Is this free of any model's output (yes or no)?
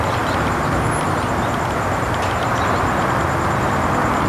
yes